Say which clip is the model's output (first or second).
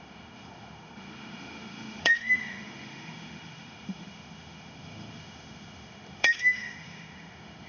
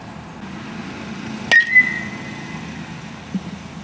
first